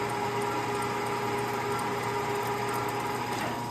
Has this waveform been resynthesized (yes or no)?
no